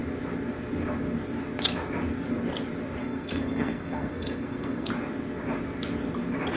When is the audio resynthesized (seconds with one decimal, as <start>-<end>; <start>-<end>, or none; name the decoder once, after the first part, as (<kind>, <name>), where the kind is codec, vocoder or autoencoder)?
3.0-4.9 (codec, SNAC)